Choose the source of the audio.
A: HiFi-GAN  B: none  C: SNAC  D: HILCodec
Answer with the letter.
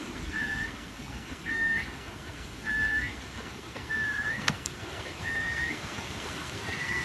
C